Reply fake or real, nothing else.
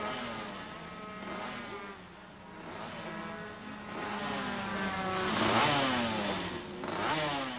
real